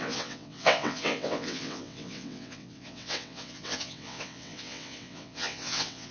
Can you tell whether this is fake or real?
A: fake